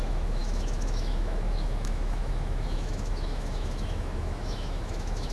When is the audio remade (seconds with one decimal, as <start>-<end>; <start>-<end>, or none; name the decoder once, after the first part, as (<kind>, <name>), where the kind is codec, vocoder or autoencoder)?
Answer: 0.0-5.3 (autoencoder, DAC-VAE)